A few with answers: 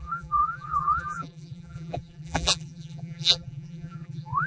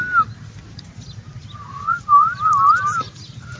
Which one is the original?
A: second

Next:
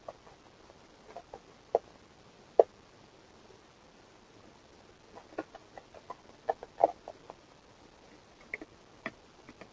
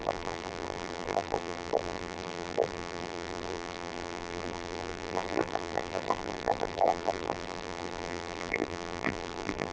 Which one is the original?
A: first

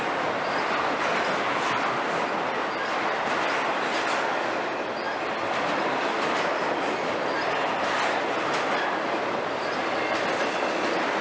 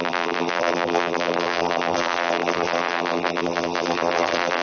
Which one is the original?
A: first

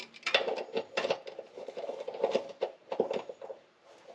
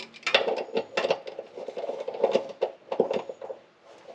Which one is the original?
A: second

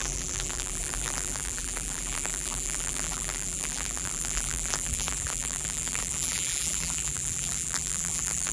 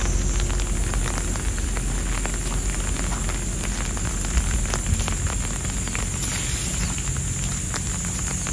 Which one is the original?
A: second